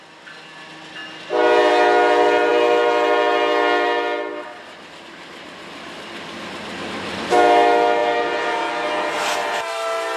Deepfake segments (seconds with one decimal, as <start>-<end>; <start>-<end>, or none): none